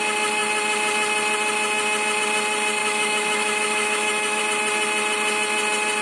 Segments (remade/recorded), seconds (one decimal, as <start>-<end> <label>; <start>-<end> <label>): 0.0-2.8 recorded; 2.8-4.4 remade; 4.4-6.0 recorded

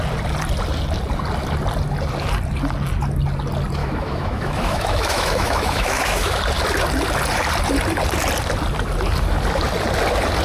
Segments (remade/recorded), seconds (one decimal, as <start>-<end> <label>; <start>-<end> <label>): 0.0-3.8 recorded; 3.8-6.4 remade; 6.4-10.4 recorded

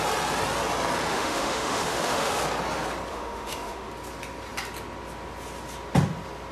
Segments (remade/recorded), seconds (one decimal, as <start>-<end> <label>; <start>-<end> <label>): 0.0-1.1 recorded; 1.1-2.4 remade; 2.4-3.1 recorded; 3.1-3.9 remade; 3.9-6.5 recorded